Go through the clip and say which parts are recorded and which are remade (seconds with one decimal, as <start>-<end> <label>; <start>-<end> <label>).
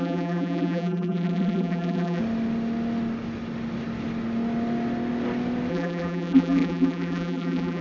0.0-2.2 remade; 2.2-5.7 recorded; 5.7-7.8 remade